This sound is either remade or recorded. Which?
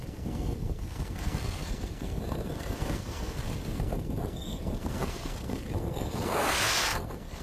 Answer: remade